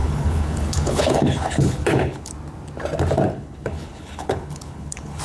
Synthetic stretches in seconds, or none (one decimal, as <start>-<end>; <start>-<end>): 0.0-2.3; 3.3-5.2